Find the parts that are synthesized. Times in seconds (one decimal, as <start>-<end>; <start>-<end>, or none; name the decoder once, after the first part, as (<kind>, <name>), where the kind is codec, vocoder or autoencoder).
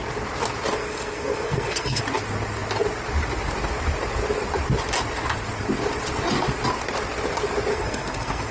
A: 0.8-2.0 (codec, SNAC); 7.7-8.5